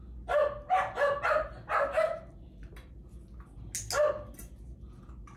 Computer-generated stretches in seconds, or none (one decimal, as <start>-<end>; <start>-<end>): none